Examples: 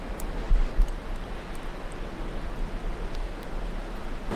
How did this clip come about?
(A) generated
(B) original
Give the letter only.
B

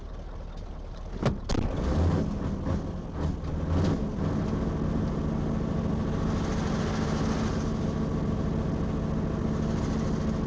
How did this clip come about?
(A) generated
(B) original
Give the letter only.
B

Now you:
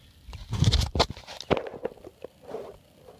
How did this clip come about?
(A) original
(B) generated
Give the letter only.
A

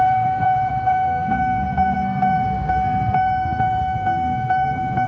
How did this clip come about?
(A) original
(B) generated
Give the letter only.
B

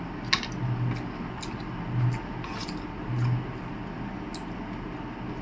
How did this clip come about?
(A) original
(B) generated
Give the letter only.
A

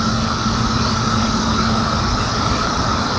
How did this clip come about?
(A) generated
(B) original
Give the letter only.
A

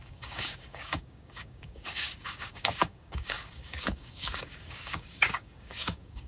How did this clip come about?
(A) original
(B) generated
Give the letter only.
B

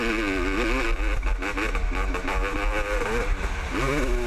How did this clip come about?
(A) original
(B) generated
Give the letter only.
A